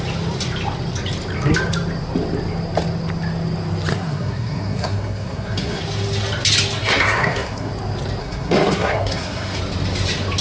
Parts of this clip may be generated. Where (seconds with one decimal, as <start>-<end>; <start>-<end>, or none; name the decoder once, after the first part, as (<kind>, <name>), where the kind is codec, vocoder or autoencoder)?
3.9-5.8 (codec, SNAC); 6.8-7.7; 8.2-9.6